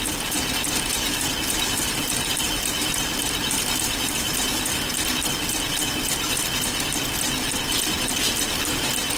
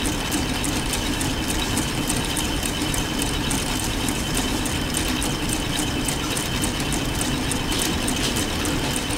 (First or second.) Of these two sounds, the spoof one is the second